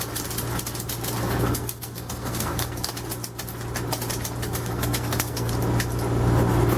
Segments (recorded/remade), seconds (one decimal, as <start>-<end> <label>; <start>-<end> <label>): 0.0-1.2 recorded; 1.2-2.9 remade; 2.9-4.4 recorded; 4.4-5.5 remade; 5.5-6.8 recorded